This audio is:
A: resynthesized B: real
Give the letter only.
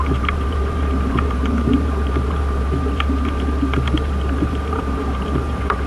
A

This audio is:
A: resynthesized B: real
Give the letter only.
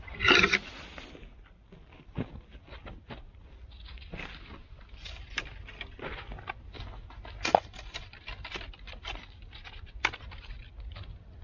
B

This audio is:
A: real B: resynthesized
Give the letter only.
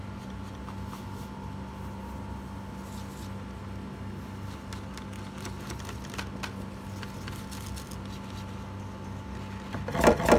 A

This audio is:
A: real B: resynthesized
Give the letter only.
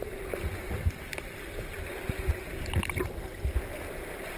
A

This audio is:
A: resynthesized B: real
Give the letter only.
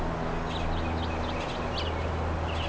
B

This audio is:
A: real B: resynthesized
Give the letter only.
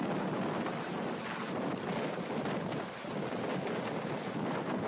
A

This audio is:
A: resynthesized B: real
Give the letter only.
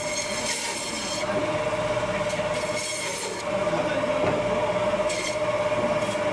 B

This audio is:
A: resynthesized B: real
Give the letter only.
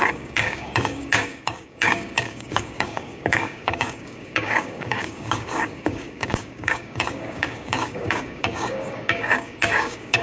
A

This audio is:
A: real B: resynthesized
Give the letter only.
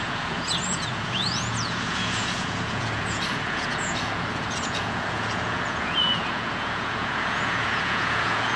B